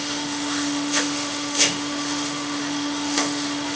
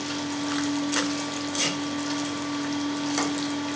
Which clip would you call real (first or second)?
second